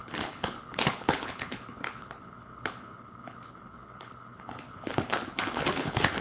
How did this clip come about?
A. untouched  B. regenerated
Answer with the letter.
B